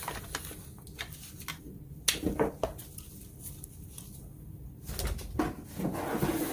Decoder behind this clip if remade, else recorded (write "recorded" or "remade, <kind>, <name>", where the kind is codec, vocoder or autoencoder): recorded